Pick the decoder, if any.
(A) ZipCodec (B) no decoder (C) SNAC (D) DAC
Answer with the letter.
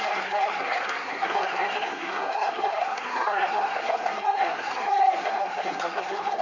C